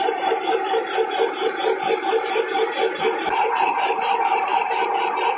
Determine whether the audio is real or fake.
fake